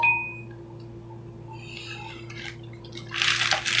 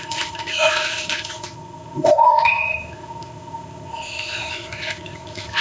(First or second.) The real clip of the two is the first